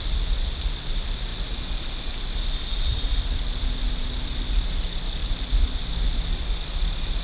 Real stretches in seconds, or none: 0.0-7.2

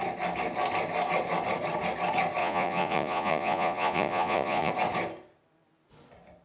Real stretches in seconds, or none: 0.0-2.4; 4.7-6.4

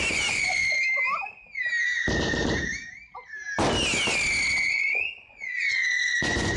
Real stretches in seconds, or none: 0.6-4.6

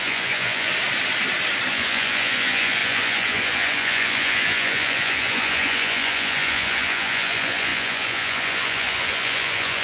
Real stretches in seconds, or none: 0.7-1.7

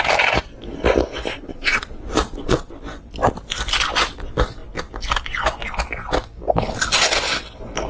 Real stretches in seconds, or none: 0.0-1.3; 2.7-7.9

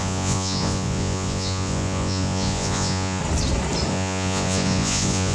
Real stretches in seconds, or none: 3.2-3.9